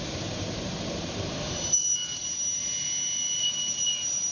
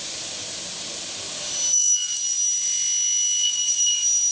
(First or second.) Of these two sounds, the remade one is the first